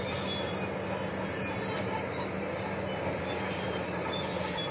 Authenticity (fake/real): real